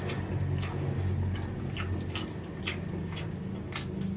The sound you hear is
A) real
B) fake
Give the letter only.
A